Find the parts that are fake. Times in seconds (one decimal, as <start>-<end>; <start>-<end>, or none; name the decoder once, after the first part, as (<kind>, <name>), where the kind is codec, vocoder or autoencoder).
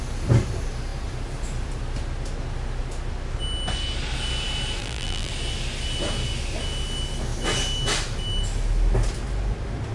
4.8-5.3 (vocoder, BigVGAN v2)